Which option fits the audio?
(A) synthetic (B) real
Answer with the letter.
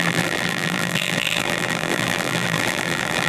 A